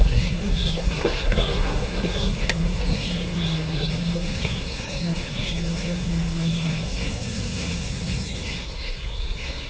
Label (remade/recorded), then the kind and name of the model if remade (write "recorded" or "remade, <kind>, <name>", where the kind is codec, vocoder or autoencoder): remade, codec, SNAC